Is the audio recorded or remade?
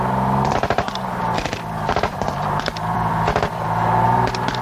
remade